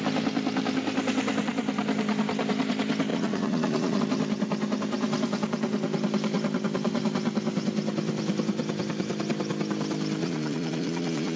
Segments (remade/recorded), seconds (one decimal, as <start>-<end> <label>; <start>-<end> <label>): 0.0-3.1 recorded; 3.1-4.0 remade; 4.0-10.2 recorded; 10.2-11.4 remade